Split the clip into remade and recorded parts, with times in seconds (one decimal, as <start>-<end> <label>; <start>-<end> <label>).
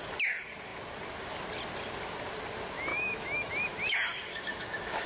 0.0-2.9 recorded; 2.9-3.5 remade; 3.5-4.3 recorded; 4.3-5.1 remade